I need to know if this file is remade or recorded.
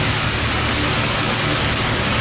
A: remade